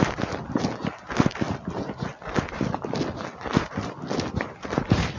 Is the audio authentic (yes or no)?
yes